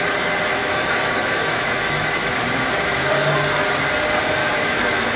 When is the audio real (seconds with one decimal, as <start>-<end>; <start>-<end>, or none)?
0.0-0.6; 3.1-4.4